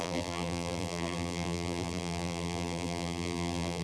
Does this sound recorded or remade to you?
remade